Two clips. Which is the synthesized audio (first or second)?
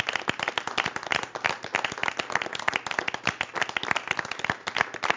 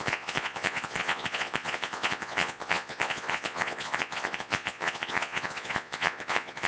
second